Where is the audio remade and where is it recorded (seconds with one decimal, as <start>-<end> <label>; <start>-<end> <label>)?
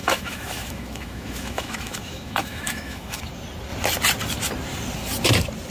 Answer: 0.0-3.2 remade; 3.2-5.7 recorded